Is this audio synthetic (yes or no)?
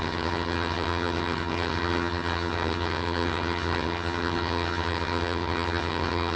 yes